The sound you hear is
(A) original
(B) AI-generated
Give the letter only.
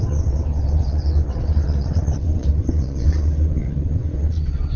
B